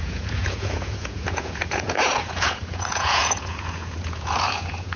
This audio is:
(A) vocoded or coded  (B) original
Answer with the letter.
A